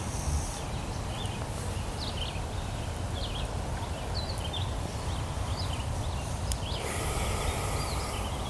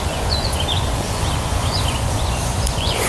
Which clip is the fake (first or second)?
second